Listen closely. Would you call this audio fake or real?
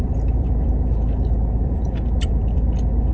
fake